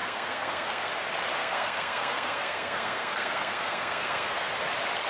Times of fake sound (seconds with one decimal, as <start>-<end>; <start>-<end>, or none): 0.0-0.9; 1.4-4.5